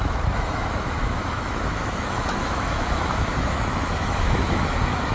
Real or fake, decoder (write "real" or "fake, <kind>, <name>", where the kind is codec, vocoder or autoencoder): fake, autoencoder, DAC-VAE